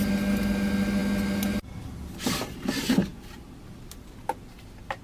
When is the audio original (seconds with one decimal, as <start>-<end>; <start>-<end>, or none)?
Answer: 0.0-5.0